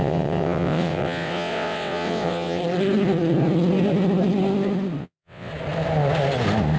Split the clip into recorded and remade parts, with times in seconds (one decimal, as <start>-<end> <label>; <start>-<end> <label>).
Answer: 0.0-2.6 remade; 2.6-5.0 recorded; 5.0-5.5 remade; 5.5-6.8 recorded